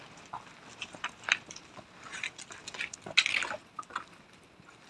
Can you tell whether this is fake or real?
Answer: real